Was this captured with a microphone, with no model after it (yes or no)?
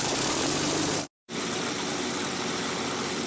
no